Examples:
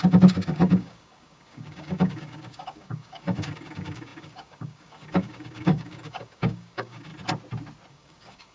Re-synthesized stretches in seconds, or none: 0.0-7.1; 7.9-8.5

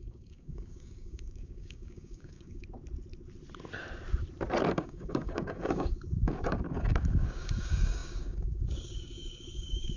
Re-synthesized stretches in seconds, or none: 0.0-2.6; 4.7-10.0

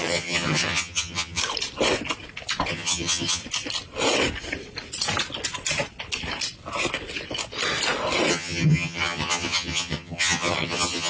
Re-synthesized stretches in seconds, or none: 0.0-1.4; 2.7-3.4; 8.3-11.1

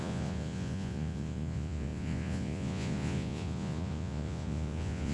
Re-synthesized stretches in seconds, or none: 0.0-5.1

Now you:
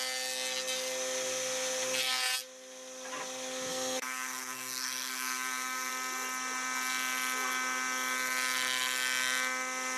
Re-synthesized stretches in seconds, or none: 3.7-5.9